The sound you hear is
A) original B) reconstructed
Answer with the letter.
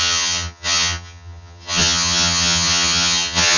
B